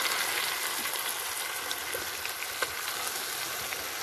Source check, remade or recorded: recorded